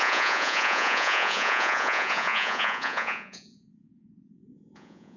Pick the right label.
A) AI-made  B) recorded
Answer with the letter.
A